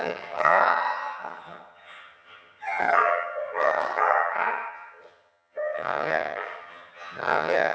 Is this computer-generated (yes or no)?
yes